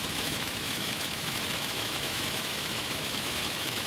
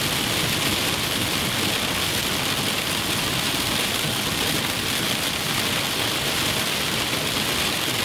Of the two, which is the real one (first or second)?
second